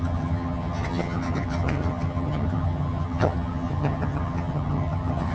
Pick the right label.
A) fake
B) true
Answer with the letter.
A